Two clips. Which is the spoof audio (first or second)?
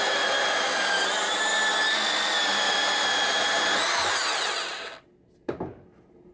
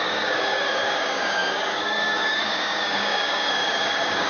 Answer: second